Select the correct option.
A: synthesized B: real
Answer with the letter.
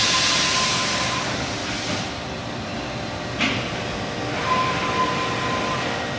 B